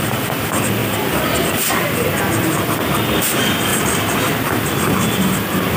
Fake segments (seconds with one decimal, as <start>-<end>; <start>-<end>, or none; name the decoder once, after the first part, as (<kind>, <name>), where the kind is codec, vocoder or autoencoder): 0.8-2.2 (vocoder, BigVGAN v2)